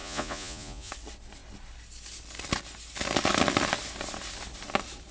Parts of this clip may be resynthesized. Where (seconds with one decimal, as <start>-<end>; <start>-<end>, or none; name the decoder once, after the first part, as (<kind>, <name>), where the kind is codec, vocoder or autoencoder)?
0.0-0.9 (vocoder, Vocos)